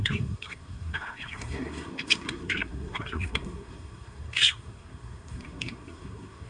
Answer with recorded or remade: remade